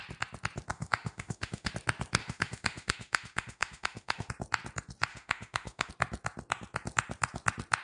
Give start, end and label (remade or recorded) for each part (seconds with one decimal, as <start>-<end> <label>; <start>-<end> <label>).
0.0-0.7 recorded; 0.7-1.7 remade; 1.7-2.2 recorded; 2.2-4.3 remade; 4.3-5.1 recorded; 5.1-5.9 remade; 5.9-7.8 recorded